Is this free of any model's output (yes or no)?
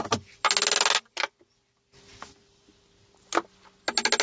yes